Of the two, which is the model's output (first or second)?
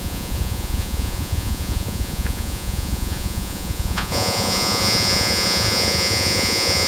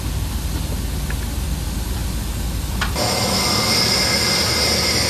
first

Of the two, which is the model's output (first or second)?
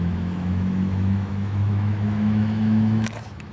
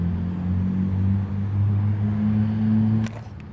first